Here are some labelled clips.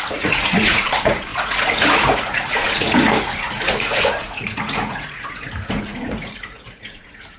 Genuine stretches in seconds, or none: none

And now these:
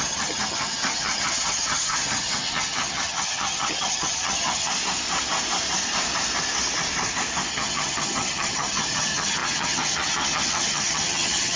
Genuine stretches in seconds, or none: 4.7-7.5

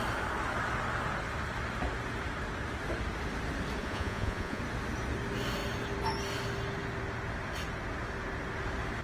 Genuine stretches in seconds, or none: 0.0-3.8; 4.6-9.0

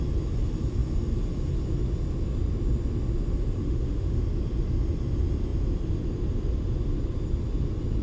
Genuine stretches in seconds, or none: 0.0-3.6; 4.2-8.0

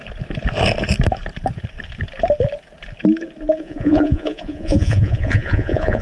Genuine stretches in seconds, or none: 0.0-3.6

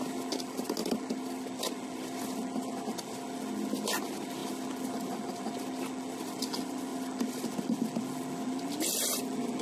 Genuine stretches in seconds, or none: 0.0-9.6

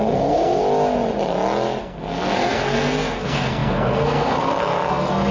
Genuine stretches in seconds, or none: 0.6-1.8